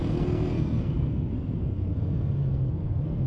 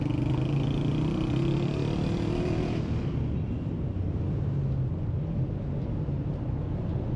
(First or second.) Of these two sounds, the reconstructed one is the first